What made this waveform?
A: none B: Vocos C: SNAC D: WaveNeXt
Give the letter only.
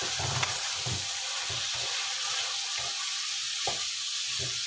A